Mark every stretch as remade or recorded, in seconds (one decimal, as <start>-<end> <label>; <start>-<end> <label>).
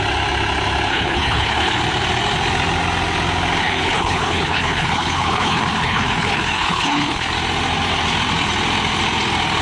0.0-0.9 recorded; 0.9-1.8 remade; 1.8-3.6 recorded; 3.6-7.3 remade; 7.3-9.6 recorded